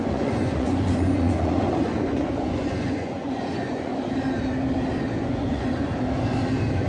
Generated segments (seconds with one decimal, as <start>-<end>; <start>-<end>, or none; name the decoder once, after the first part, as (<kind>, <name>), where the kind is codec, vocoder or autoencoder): 0.0-3.9 (vocoder, Vocos); 5.2-5.9